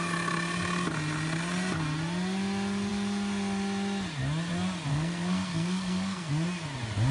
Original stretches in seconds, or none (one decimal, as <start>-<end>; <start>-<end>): 0.0-4.9; 6.3-7.1